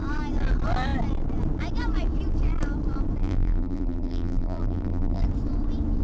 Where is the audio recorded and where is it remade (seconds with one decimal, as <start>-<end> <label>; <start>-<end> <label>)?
0.0-3.2 recorded; 3.2-5.2 remade; 5.2-6.0 recorded